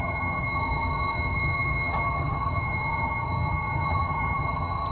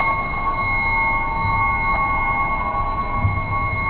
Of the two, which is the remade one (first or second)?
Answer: first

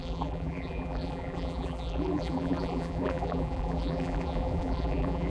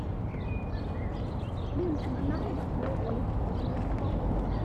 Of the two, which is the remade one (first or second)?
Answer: first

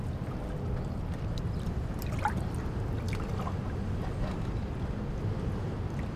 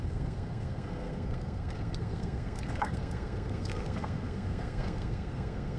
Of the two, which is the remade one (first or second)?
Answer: second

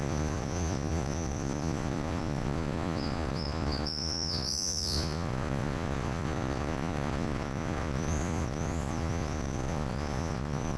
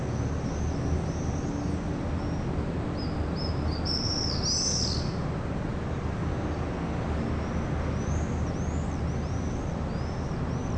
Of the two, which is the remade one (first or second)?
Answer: first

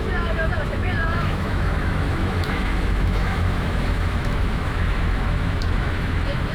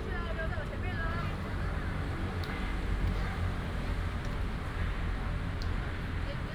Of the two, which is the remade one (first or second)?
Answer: first